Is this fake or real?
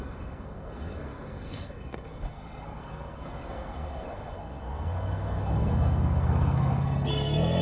fake